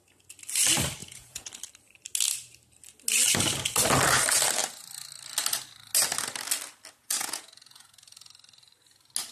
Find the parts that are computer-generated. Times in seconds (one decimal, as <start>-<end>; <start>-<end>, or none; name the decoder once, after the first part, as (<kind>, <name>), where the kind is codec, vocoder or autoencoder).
1.0-1.5 (vocoder, Vocos); 7.0-8.3